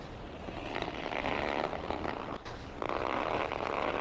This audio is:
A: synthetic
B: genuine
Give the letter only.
B